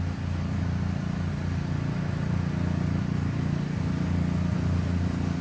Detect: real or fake real